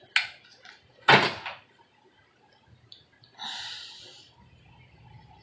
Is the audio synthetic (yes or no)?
no